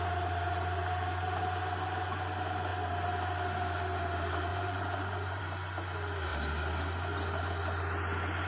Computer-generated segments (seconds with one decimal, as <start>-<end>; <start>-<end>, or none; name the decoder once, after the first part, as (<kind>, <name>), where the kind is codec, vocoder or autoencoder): 4.5-5.4 (vocoder, Vocos)